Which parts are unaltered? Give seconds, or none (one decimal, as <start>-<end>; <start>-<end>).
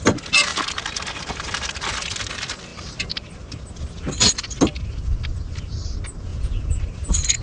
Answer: 0.0-6.3; 6.8-7.4